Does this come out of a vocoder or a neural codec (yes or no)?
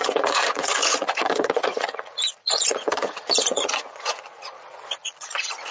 yes